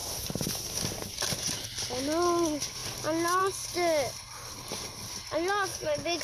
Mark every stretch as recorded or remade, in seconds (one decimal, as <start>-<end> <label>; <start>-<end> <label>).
0.0-5.7 recorded; 5.7-6.2 remade